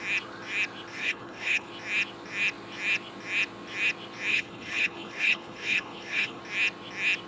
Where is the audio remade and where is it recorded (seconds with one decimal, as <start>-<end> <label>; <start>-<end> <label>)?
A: 0.0-0.9 recorded; 0.9-1.7 remade; 1.7-4.3 recorded; 4.3-6.4 remade; 6.4-7.3 recorded